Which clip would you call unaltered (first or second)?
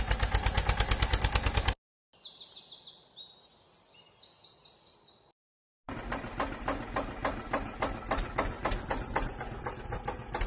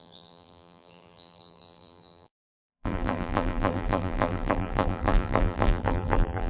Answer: first